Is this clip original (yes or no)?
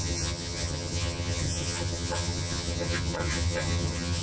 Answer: no